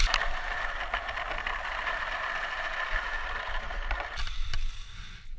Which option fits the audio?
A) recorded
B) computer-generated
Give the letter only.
A